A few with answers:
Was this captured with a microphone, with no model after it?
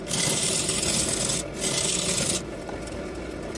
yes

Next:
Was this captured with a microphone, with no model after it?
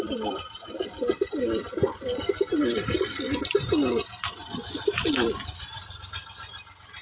no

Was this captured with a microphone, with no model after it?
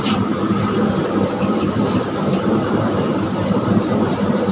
no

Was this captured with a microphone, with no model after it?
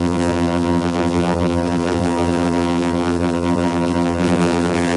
no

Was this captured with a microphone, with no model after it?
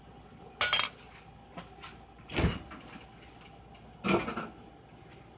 yes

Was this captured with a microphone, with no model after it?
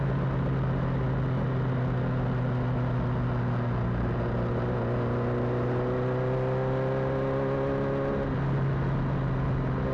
yes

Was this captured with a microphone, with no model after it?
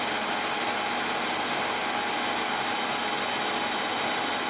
yes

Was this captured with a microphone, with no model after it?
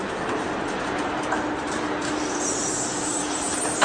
no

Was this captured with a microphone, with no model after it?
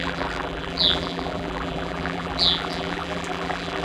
no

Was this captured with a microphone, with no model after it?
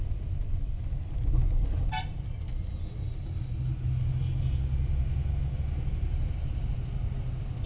yes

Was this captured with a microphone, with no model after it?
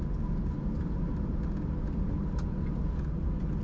yes